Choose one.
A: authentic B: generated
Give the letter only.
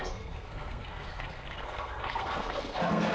B